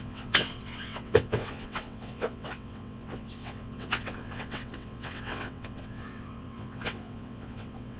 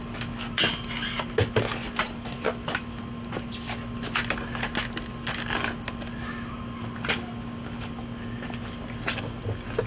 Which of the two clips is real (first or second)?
second